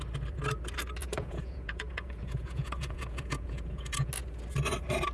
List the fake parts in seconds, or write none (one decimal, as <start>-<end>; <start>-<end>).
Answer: 1.0-4.1